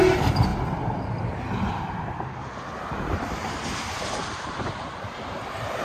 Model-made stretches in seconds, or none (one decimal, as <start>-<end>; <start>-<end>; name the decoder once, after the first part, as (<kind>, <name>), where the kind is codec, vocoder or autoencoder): 0.0-0.5 (vocoder, BigVGAN v2); 1.7-2.4; 3.0-5.8